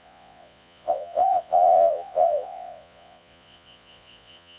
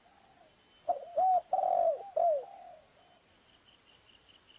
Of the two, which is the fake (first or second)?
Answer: first